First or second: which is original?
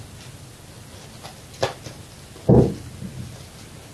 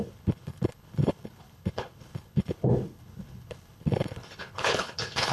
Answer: first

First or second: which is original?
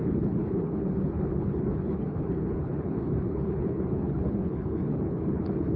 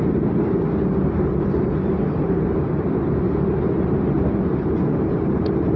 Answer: second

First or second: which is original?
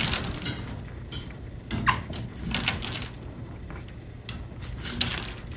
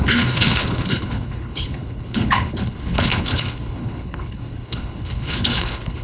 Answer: first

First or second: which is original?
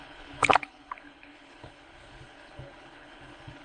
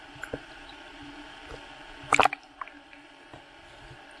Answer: second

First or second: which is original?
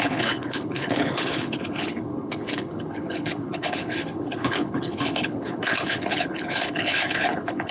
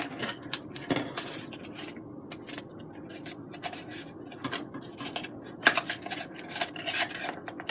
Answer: second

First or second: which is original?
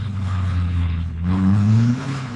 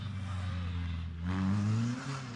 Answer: second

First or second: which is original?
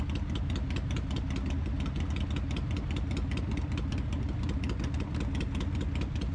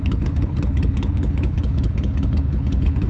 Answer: first